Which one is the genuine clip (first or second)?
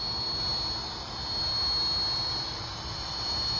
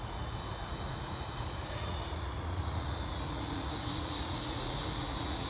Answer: first